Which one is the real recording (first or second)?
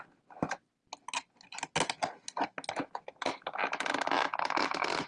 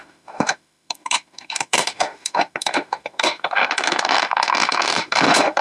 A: first